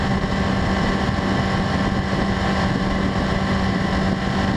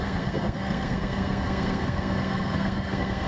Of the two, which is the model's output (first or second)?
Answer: second